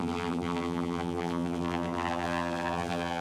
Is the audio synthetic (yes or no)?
yes